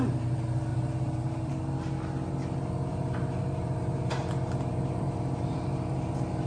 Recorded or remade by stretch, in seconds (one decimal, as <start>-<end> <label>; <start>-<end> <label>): 0.0-0.7 recorded; 0.7-1.5 remade; 1.5-2.9 recorded; 2.9-6.5 remade